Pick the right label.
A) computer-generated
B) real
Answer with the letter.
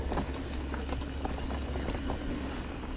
B